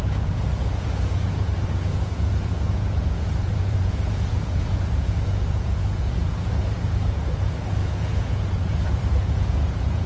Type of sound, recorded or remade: remade